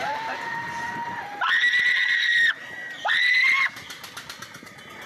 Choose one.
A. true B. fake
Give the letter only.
A